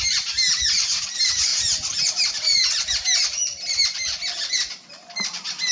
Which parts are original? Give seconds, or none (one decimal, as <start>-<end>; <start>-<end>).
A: 0.0-5.7